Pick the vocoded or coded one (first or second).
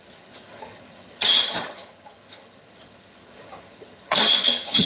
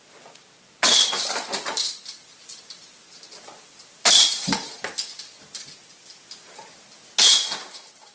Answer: first